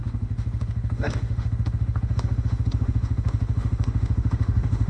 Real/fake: fake